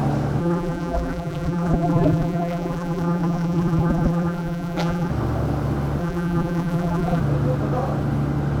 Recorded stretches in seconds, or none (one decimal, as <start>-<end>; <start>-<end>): 0.0-0.4; 5.1-6.0; 7.2-8.6